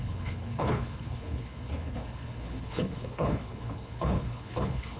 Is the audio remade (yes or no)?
yes